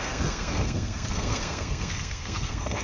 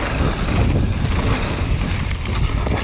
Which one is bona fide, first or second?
second